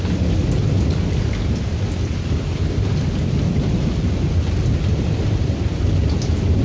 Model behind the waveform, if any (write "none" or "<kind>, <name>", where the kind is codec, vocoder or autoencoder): none